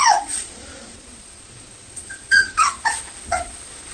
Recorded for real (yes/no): no